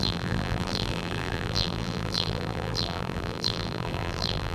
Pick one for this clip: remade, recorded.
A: remade